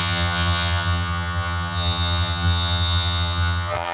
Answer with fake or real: fake